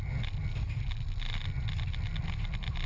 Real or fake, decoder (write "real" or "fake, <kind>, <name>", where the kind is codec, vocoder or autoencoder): real